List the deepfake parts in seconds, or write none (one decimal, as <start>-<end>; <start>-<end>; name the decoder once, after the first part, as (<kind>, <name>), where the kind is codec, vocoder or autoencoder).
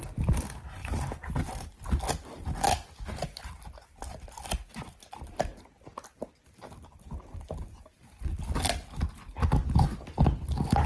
none